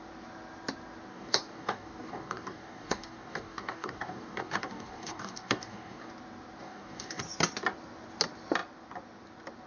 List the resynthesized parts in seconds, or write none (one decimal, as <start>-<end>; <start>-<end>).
1.1-6.1; 6.6-7.2